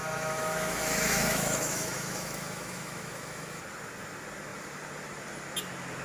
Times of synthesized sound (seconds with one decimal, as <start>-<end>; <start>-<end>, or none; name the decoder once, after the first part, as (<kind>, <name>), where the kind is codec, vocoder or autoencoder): 0.0-3.6 (autoencoder, DAC-VAE)